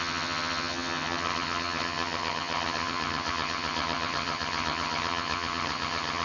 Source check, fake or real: fake